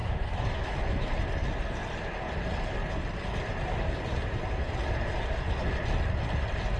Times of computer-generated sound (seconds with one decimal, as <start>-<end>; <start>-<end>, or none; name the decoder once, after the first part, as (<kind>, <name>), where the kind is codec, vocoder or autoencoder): 0.0-0.8 (autoencoder, DAC-VAE)